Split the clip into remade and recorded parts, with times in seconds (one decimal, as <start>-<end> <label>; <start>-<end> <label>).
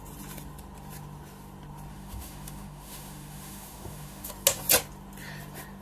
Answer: 0.0-1.9 recorded; 1.9-4.3 remade; 4.3-5.8 recorded